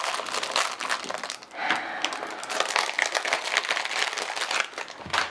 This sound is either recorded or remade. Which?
recorded